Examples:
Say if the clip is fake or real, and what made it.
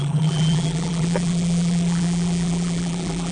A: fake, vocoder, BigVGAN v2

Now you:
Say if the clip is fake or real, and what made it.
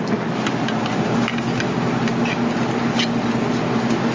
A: real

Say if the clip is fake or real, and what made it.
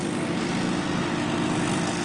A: real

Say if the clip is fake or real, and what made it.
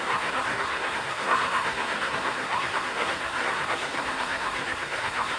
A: fake, codec, SNAC